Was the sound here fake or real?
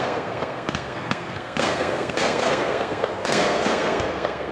fake